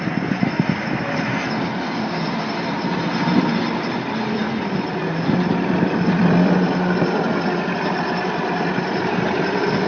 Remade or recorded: recorded